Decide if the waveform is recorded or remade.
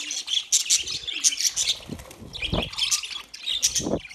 recorded